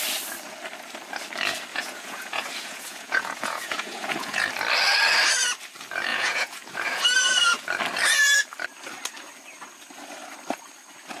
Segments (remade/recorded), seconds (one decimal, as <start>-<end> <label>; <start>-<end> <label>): 0.0-1.7 recorded; 1.7-4.5 remade; 4.5-6.1 recorded; 6.1-7.0 remade; 7.0-11.2 recorded